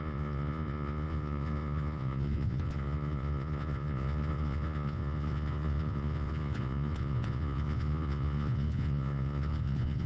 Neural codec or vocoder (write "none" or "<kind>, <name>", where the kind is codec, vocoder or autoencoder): vocoder, Vocos